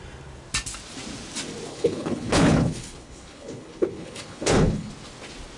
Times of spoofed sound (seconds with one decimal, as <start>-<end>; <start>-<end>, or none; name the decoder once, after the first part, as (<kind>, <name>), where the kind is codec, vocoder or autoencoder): 1.7-4.9 (codec, HILCodec)